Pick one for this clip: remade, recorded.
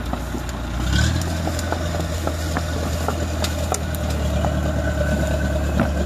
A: recorded